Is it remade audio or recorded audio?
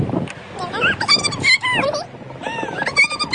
recorded